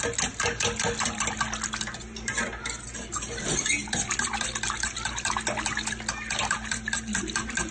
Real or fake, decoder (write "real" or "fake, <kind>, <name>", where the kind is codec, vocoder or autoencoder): real